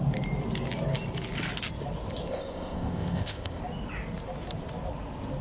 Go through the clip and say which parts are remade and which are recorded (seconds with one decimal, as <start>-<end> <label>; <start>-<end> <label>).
0.0-2.3 recorded; 2.3-3.6 remade; 3.6-5.4 recorded